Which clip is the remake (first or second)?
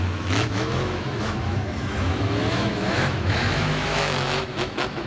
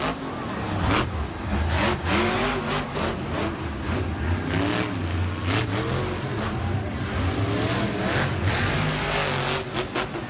first